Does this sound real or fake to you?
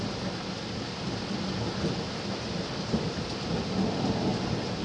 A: real